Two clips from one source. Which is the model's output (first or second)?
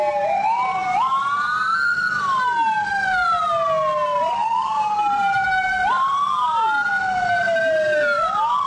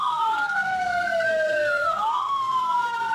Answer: second